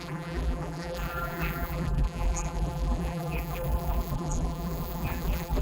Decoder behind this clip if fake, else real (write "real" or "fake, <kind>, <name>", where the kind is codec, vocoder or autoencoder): fake, vocoder, BigVGAN v2